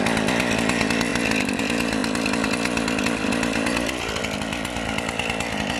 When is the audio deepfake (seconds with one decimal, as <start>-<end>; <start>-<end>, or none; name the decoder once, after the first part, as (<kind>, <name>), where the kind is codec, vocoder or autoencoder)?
1.1-1.6 (vocoder, BigVGAN v2); 2.0-4.2